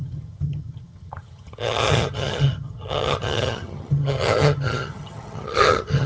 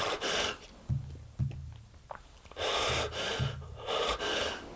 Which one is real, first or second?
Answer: second